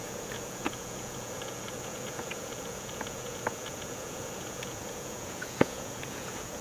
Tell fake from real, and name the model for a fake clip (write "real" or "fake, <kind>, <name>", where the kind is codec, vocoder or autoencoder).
fake, vocoder, Vocos